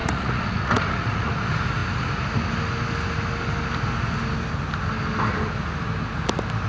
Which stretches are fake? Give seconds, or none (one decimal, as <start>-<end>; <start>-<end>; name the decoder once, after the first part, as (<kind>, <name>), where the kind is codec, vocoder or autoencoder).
0.0-1.3 (vocoder, Vocos)